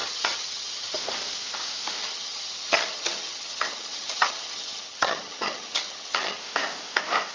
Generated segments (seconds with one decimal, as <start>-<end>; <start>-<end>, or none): 0.0-1.0; 2.0-6.4